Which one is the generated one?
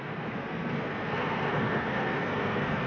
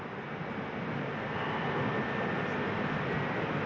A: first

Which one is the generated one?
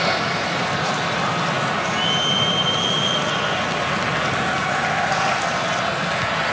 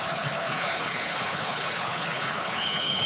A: second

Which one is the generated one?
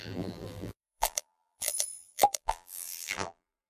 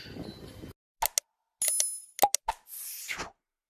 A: first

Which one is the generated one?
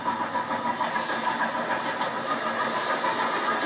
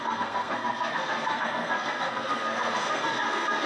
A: second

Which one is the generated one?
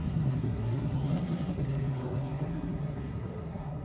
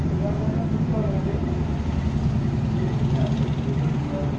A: first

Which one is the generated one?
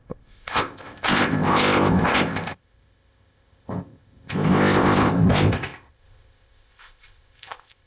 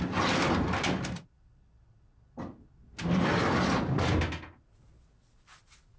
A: first